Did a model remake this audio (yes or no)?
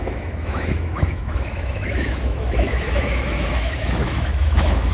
yes